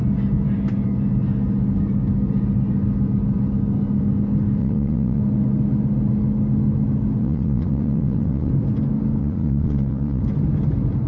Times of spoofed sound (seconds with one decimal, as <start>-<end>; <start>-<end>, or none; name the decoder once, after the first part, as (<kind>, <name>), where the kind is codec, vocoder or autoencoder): 4.6-5.2 (vocoder, Vocos); 7.2-8.5; 9.2-10.2